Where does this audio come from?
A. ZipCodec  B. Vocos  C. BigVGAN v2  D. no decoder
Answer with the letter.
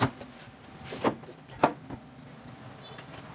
D